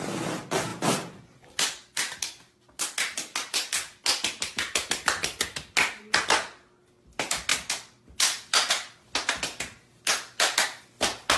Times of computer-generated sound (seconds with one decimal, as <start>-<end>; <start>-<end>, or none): 7.5-8.7